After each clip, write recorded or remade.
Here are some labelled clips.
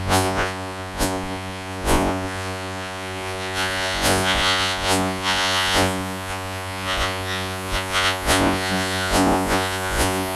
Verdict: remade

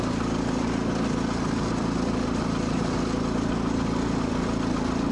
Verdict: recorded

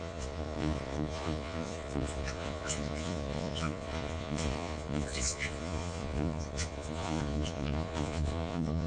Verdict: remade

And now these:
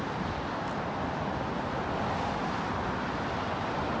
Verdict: recorded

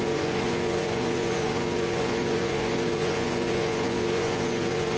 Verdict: remade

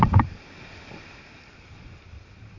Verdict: recorded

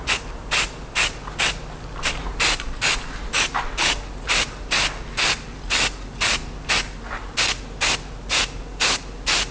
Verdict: recorded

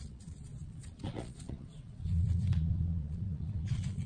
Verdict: remade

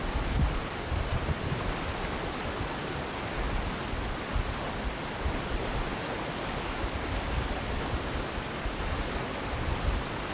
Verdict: recorded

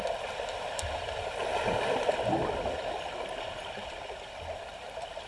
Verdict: recorded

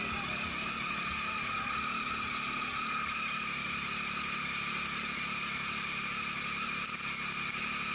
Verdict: recorded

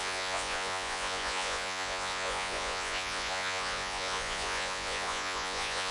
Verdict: remade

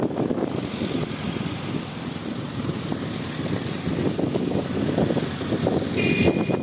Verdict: recorded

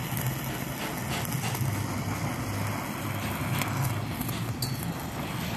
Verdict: recorded